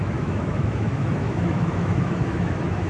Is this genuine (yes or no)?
no